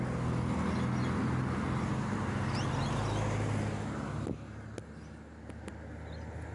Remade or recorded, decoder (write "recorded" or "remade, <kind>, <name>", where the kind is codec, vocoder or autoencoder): recorded